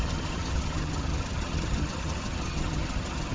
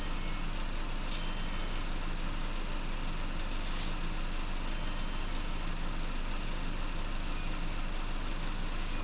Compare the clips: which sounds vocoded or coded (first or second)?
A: first